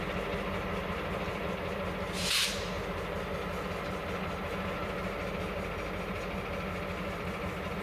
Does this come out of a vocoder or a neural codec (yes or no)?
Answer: no